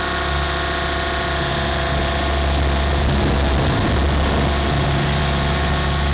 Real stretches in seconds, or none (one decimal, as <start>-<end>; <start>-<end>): 0.0-6.1